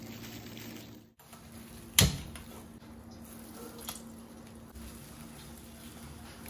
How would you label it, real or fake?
real